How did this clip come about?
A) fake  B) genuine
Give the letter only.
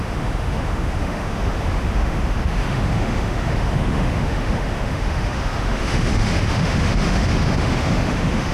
A